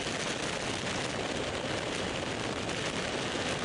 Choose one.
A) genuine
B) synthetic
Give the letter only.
A